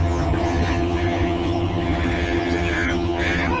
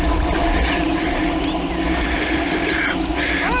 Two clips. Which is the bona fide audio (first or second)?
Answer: second